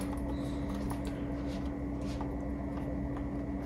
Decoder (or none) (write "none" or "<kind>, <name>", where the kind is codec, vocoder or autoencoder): none